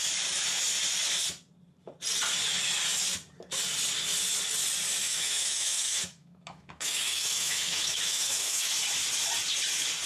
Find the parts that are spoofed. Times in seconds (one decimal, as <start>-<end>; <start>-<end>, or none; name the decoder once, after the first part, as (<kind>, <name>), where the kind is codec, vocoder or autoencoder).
5.0-8.7 (autoencoder, DAC-VAE)